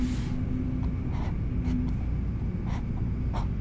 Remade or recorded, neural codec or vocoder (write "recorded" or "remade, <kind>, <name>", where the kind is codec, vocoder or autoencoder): recorded